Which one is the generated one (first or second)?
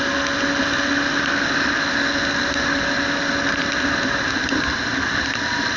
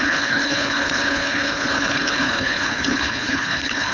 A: second